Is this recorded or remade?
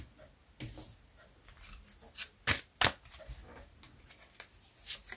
recorded